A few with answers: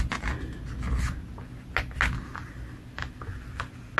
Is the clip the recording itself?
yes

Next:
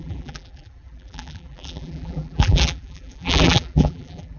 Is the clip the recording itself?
no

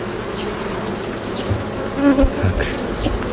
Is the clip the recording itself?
yes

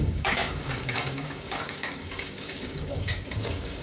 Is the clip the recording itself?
no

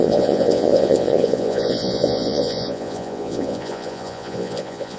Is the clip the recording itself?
no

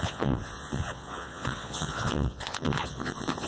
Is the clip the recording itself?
no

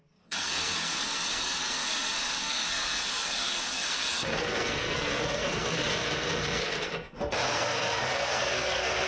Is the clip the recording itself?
no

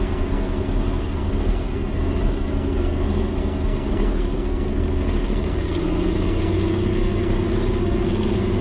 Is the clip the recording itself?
no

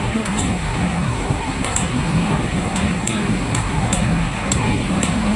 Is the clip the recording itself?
no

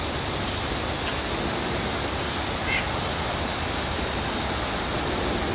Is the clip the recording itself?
yes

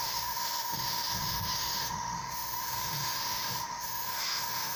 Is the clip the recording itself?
no